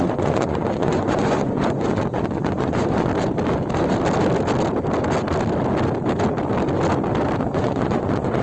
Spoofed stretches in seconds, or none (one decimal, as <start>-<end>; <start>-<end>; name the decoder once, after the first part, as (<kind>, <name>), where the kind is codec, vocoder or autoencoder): 0.0-3.1 (vocoder, Vocos); 7.4-8.4